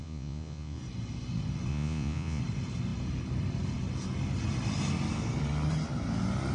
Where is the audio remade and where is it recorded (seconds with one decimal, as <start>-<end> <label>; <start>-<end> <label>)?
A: 0.0-0.8 remade; 0.8-1.7 recorded; 1.7-2.4 remade; 2.4-6.5 recorded